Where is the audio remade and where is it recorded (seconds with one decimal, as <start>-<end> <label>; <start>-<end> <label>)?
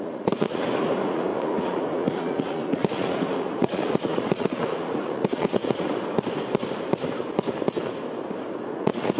0.0-5.9 remade; 5.9-8.7 recorded; 8.7-9.2 remade